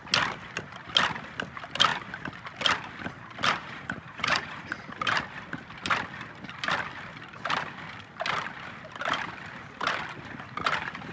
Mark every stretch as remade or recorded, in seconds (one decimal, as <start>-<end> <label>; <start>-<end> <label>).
0.0-3.6 recorded; 3.6-4.8 remade; 4.8-11.1 recorded